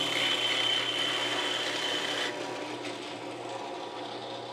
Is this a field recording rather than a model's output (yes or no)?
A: yes